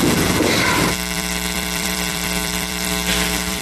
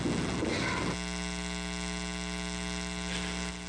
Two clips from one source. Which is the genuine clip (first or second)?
second